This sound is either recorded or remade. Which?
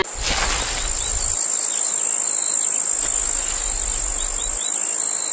recorded